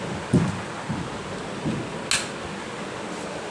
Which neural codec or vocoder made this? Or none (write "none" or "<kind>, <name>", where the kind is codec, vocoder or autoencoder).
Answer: none